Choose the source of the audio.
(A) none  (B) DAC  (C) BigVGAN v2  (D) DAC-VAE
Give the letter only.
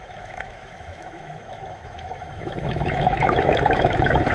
D